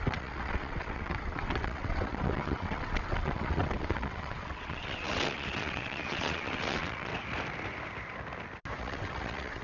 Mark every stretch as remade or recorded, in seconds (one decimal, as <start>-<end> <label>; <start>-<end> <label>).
0.0-7.1 remade; 7.1-8.8 recorded; 8.8-9.6 remade